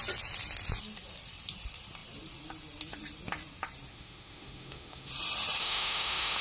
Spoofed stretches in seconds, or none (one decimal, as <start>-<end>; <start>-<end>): 3.9-5.1; 5.6-6.4